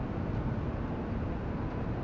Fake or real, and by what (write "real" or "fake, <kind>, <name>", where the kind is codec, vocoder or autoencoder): real